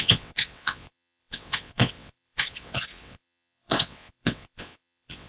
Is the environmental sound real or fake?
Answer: fake